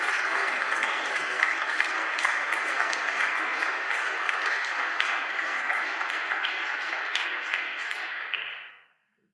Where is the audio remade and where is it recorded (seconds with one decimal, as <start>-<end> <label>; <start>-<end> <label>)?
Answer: 0.0-8.2 remade; 8.2-8.7 recorded; 8.7-9.3 remade